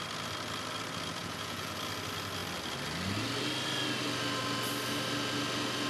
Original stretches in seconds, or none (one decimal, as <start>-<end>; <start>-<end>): 0.0-1.2; 1.7-5.9